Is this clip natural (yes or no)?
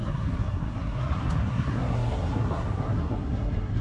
no